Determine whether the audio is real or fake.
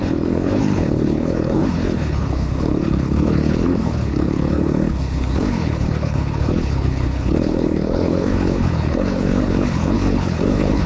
fake